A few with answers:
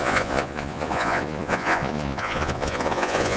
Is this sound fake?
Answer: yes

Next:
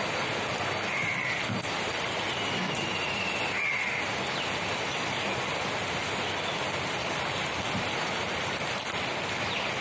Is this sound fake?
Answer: no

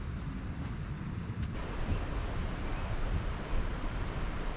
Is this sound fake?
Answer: yes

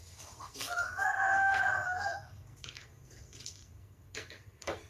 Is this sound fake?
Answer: yes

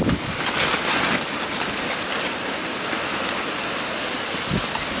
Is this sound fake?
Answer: no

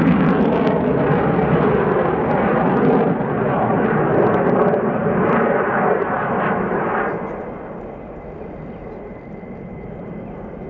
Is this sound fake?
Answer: no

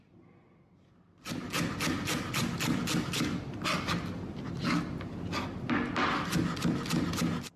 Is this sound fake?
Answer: no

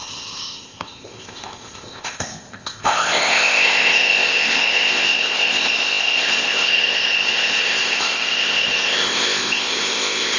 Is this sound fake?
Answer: yes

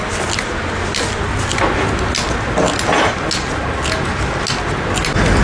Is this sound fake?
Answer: no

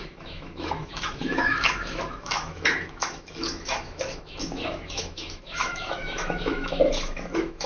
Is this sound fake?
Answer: yes